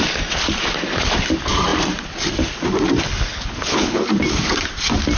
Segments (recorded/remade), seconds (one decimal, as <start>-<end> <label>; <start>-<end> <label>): 0.0-3.3 recorded; 3.3-4.0 remade; 4.0-5.2 recorded